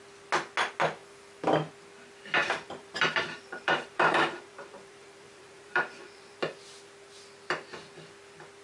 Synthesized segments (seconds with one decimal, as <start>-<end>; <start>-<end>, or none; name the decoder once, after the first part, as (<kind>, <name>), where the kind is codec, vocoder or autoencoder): 2.4-6.5 (vocoder, BigVGAN v2)